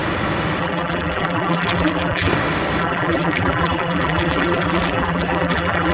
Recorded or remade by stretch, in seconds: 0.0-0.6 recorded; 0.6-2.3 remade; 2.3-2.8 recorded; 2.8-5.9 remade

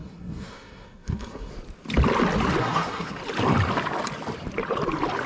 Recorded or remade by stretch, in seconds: 0.0-1.5 remade; 1.5-2.6 recorded; 2.6-3.2 remade; 3.2-5.3 recorded

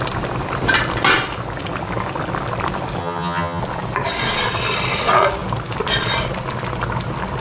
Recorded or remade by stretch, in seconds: 0.0-3.0 recorded; 3.0-3.6 remade; 3.6-7.4 recorded

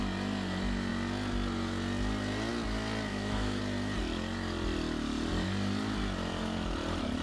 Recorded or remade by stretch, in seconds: 0.0-3.1 recorded; 3.1-3.6 remade; 3.6-7.2 recorded

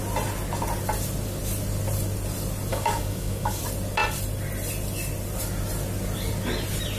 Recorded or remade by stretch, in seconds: 0.0-2.7 recorded; 2.7-3.6 remade; 3.6-7.0 recorded